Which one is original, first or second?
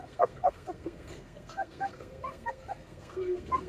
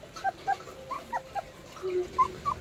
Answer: second